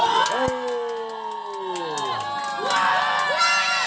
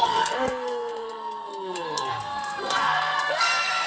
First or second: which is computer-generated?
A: second